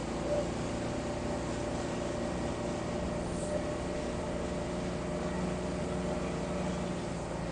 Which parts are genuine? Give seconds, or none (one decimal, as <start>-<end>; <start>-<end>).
0.0-7.5